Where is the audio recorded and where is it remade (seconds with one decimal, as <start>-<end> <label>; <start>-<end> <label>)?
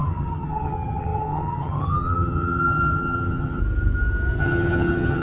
0.0-3.6 remade; 3.6-4.4 recorded; 4.4-5.2 remade